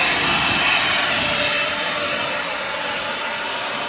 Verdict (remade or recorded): recorded